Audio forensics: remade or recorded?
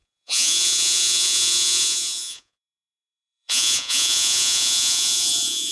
remade